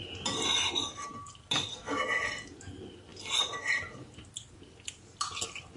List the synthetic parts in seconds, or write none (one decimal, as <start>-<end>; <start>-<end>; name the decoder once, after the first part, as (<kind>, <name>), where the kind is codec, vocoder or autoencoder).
none